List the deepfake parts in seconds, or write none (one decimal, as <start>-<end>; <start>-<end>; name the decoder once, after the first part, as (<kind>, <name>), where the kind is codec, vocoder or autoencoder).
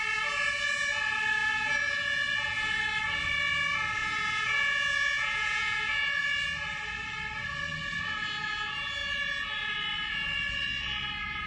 1.4-2.8 (vocoder, Vocos); 4.0-6.1